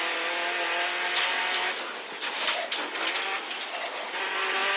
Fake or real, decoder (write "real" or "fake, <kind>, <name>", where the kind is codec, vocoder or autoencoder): real